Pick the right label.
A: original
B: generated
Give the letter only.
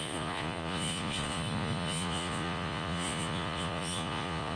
B